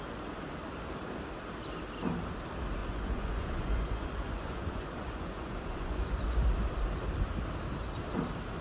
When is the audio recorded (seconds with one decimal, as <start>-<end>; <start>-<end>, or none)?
0.0-2.8; 6.3-8.6